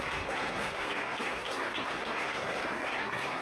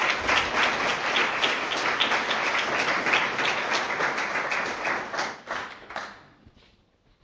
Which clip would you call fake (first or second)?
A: first